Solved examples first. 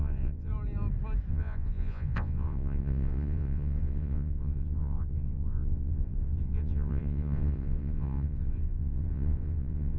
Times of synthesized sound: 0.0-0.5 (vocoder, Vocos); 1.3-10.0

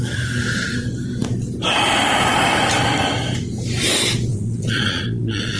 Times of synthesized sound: 4.3-5.6 (vocoder, Vocos)